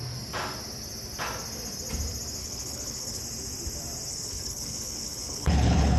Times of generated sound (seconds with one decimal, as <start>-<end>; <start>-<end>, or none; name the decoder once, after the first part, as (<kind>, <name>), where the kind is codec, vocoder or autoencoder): 2.4-3.2 (codec, HILCodec); 4.1-6.0